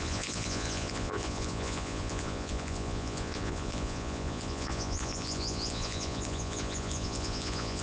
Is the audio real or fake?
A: fake